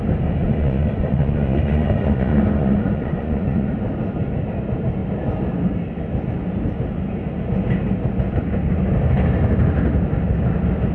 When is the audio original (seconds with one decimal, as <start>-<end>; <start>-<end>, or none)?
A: 0.0-0.4; 3.7-10.9